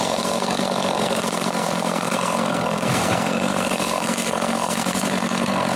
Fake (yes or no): yes